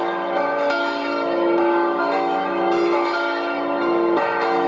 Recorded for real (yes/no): no